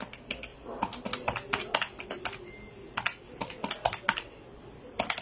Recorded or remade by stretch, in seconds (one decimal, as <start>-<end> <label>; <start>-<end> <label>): 0.0-5.2 recorded